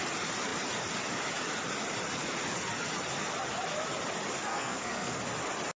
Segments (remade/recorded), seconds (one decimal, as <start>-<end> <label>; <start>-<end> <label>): 0.0-4.5 recorded; 4.5-5.1 remade; 5.1-5.8 recorded